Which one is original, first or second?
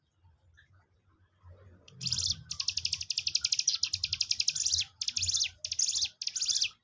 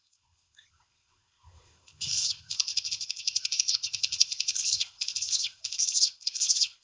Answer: first